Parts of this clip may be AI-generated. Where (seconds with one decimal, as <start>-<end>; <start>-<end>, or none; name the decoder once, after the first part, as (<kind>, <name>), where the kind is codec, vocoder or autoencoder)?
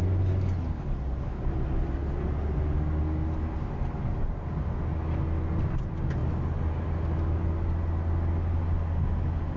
none